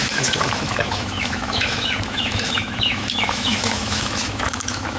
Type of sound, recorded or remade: remade